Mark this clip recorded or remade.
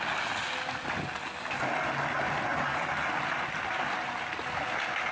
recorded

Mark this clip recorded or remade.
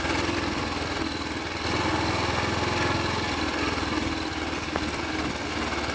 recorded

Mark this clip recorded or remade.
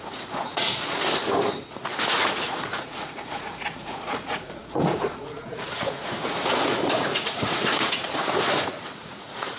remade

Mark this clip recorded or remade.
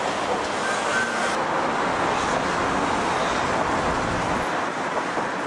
recorded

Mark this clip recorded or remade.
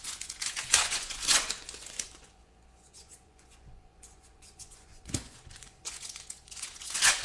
remade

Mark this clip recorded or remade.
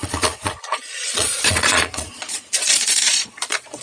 remade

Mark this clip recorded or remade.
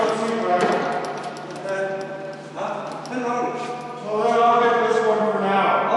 recorded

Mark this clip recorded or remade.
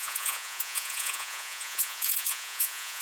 remade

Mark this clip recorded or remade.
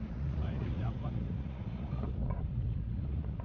remade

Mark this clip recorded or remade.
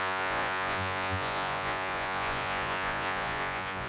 remade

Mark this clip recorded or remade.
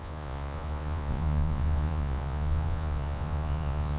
remade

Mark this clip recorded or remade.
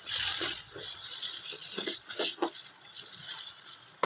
remade